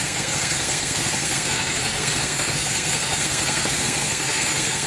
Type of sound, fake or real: fake